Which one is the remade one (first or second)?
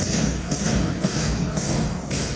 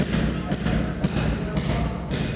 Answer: first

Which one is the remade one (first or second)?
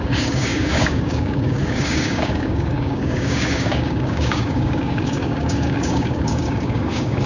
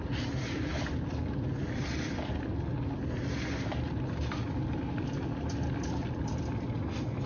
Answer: first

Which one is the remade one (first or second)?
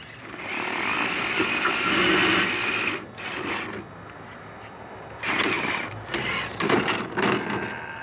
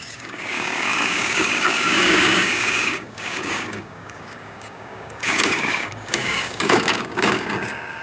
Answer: second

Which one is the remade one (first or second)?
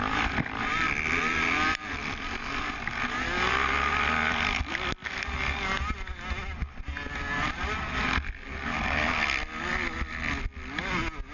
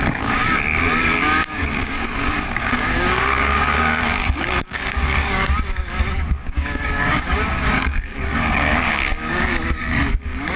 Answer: second